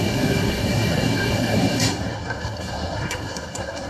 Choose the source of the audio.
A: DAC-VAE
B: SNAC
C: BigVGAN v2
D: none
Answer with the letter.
B